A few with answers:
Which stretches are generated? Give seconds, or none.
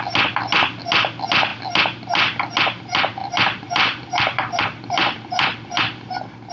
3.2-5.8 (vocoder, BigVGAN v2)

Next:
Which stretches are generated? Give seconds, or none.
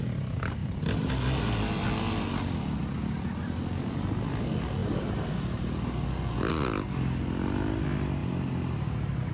0.6-1.1 (vocoder, BigVGAN v2); 8.2-8.7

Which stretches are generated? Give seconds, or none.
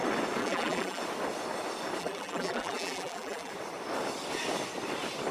0.4-1.0 (vocoder, BigVGAN v2); 2.0-3.5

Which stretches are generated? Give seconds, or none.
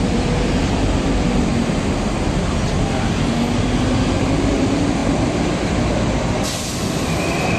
0.0-1.5 (vocoder, BigVGAN v2); 3.6-7.6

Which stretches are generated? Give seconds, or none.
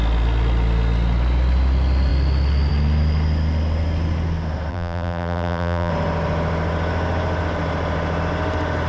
4.7-5.9 (vocoder, BigVGAN v2)